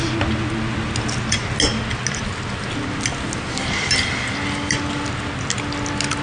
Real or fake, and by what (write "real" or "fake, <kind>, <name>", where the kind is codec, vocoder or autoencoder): real